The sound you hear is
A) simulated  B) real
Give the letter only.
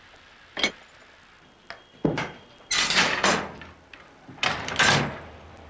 B